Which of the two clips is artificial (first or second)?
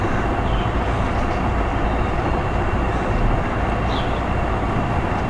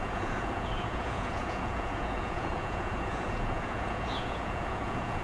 second